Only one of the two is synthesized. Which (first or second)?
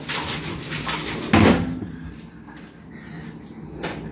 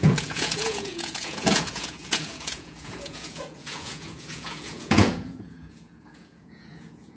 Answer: second